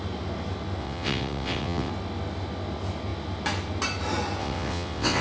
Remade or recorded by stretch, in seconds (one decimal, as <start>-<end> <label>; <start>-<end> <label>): 0.0-0.8 recorded; 0.8-1.9 remade; 1.9-4.4 recorded; 4.4-5.2 remade